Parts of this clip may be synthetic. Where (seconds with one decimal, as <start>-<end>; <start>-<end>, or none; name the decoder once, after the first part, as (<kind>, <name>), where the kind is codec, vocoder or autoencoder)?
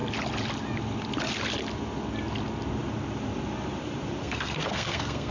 4.2-5.3 (codec, SNAC)